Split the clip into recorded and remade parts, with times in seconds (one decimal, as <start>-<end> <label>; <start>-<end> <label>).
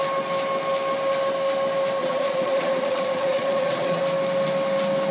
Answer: 0.0-2.0 recorded; 2.0-4.0 remade; 4.0-5.1 recorded